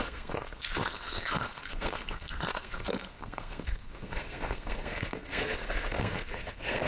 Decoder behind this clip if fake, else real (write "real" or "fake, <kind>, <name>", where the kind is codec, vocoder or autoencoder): fake, codec, SNAC